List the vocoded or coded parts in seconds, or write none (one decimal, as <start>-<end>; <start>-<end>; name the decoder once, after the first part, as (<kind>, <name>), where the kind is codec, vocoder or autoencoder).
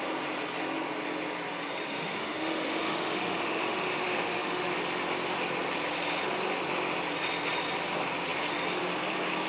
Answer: 1.9-4.7 (autoencoder, DAC-VAE)